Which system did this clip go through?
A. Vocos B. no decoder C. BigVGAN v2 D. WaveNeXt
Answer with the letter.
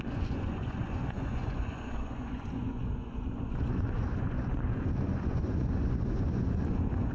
A